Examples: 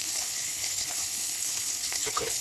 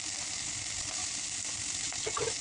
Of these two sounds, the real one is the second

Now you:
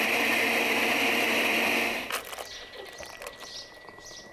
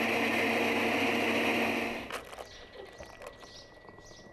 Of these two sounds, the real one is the second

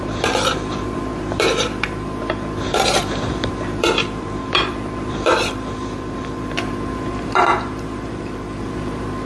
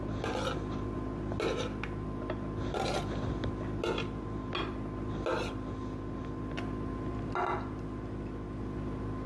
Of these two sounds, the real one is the second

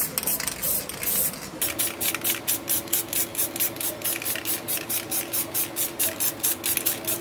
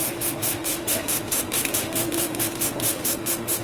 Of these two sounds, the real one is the first